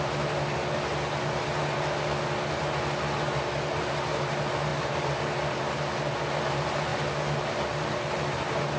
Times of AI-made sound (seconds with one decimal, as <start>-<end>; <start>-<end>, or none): none